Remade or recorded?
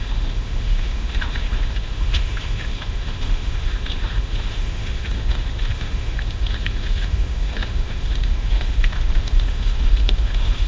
remade